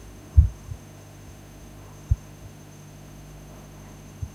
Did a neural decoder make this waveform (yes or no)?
yes